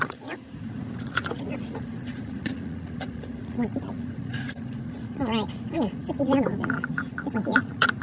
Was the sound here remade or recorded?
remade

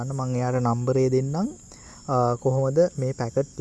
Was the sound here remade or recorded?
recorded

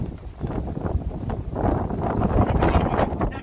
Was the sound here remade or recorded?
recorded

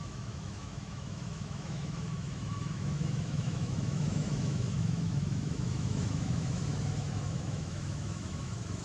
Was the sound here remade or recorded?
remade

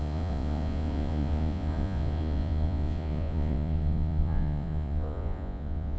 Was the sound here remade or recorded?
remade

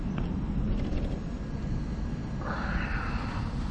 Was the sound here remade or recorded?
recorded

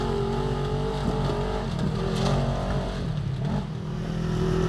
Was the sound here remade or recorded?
recorded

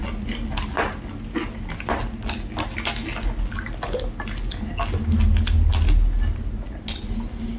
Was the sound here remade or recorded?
recorded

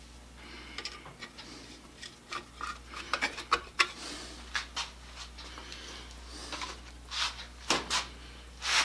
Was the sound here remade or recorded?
recorded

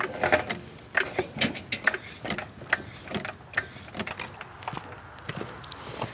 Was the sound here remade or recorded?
recorded